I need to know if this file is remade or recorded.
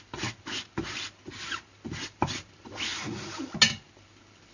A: recorded